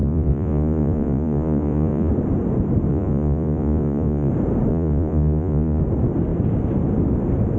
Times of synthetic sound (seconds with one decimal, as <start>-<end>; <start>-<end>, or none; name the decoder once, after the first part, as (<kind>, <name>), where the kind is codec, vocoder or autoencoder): 0.0-2.1 (vocoder, Vocos); 2.9-4.3; 4.7-5.8